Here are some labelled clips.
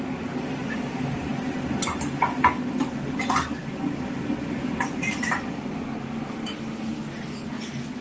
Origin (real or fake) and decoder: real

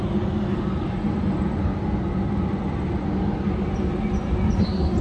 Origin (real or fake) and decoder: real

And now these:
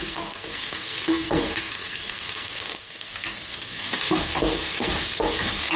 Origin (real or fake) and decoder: fake, codec, SNAC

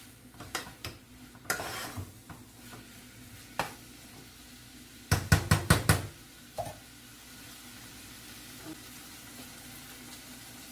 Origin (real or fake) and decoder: real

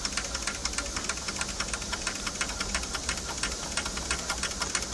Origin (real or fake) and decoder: real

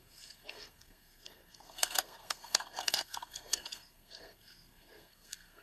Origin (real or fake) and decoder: fake, codec, SNAC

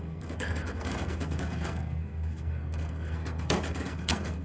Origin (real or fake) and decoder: fake, codec, SNAC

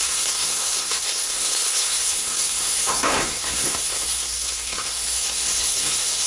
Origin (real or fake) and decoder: fake, codec, SNAC